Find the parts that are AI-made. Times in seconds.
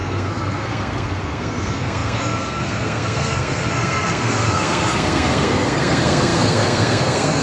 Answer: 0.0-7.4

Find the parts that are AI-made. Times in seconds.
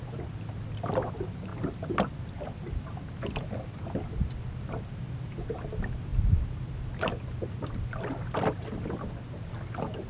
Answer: none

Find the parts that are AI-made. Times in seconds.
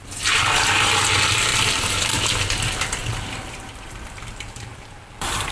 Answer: 1.5-2.3; 3.0-5.5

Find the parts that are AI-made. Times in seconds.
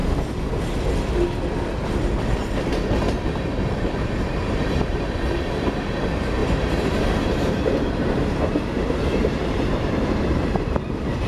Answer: 3.3-11.3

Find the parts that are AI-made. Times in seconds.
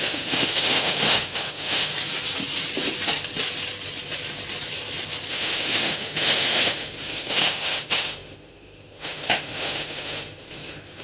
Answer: 0.0-1.9; 5.3-11.0